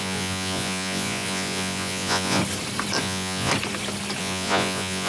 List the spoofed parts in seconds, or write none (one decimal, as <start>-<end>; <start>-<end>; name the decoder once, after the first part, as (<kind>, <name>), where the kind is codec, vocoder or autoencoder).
0.0-2.4 (vocoder, Vocos); 3.0-3.5; 4.2-5.1